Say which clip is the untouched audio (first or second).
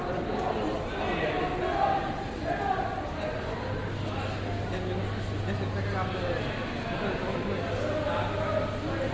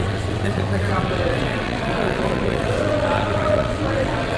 first